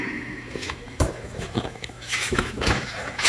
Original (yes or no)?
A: no